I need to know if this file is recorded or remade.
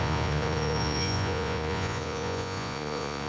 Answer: remade